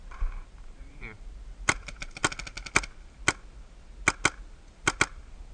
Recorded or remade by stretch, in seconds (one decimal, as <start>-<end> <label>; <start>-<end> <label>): 0.0-2.2 remade; 2.2-4.7 recorded; 4.7-5.5 remade